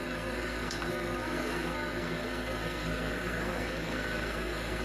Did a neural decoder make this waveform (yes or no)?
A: yes